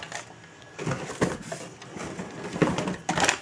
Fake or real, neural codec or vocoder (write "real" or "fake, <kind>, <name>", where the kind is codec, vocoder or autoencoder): real